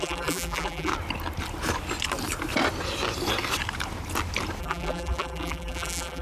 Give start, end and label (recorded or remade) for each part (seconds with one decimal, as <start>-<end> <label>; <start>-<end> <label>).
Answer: 0.0-0.9 remade; 0.9-4.6 recorded; 4.6-6.2 remade